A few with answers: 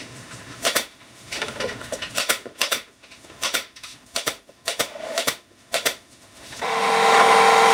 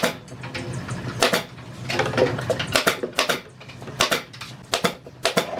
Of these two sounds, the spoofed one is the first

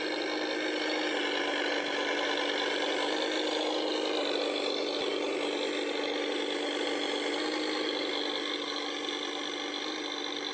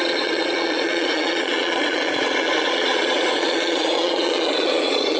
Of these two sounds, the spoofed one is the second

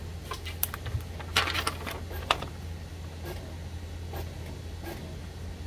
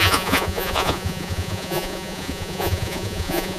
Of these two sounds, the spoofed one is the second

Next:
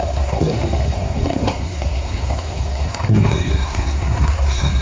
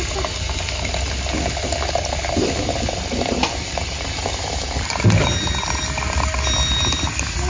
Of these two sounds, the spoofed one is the first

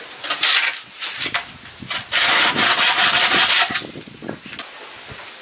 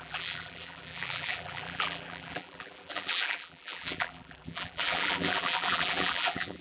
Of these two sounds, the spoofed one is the second